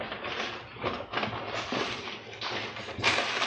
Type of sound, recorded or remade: recorded